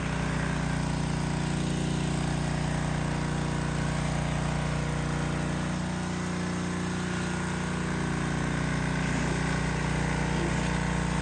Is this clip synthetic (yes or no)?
no